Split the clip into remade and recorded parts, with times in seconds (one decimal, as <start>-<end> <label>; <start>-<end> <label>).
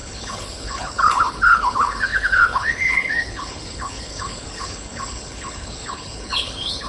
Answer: 0.0-6.9 remade